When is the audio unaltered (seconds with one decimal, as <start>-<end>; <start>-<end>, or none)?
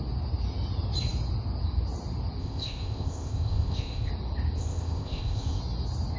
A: 0.0-2.4; 4.1-4.6; 5.6-6.2